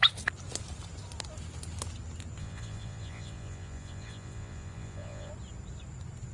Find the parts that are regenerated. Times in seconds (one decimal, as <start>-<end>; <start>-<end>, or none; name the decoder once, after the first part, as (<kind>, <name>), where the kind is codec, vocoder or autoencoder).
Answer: 2.4-5.3 (vocoder, Vocos)